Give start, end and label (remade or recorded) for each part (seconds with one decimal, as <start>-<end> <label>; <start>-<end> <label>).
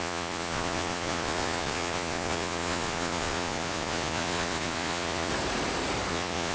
0.0-5.3 remade; 5.3-6.1 recorded; 6.1-6.5 remade